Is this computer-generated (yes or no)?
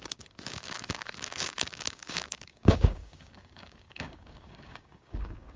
yes